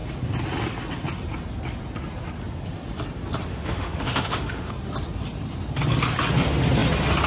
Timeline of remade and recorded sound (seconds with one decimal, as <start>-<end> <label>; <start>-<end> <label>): 0.0-3.5 recorded; 3.5-4.7 remade; 4.7-7.3 recorded